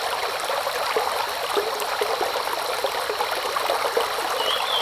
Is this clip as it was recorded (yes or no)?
yes